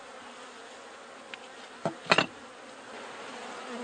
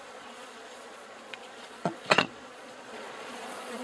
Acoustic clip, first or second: first